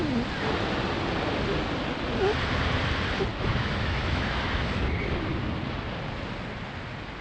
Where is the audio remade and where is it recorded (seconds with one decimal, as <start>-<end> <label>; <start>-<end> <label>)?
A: 0.0-3.3 recorded; 3.3-4.8 remade; 4.8-7.2 recorded